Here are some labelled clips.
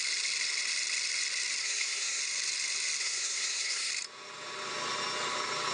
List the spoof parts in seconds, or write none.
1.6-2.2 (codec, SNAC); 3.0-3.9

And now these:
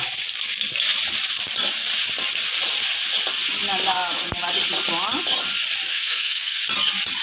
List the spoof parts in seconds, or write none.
5.9-6.6 (codec, SNAC)

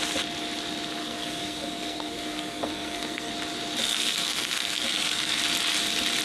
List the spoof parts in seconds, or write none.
1.0-3.3 (codec, SNAC); 3.8-5.4

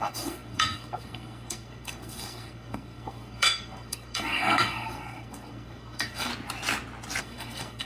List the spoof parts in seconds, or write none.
0.0-6.3 (codec, SNAC); 7.2-7.9

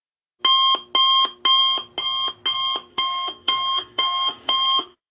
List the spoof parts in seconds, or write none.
2.9-5.1 (codec, SNAC)

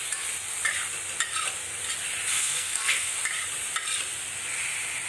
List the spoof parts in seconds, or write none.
2.3-3.2 (codec, SNAC)